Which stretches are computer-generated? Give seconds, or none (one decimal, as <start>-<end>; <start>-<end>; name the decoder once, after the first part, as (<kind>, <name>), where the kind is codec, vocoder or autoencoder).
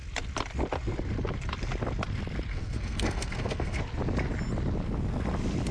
2.5-3.8 (codec, SNAC)